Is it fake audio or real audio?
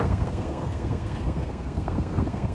fake